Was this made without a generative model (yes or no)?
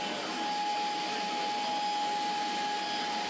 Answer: yes